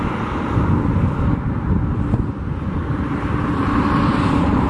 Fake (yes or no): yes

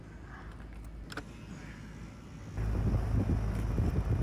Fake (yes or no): no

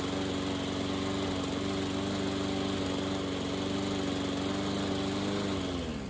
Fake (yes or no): no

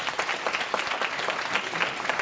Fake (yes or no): no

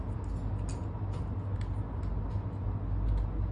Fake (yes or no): no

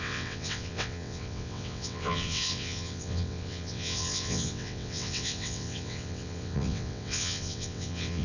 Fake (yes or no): yes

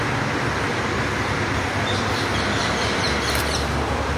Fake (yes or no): yes